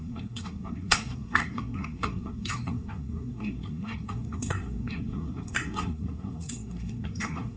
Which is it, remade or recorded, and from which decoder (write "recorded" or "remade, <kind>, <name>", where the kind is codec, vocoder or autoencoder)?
remade, codec, SNAC